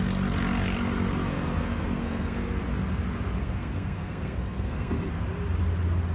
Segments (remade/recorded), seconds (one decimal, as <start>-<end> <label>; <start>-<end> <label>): 0.0-1.2 recorded; 1.2-2.6 remade; 2.6-3.4 recorded; 3.4-5.1 remade; 5.1-6.1 recorded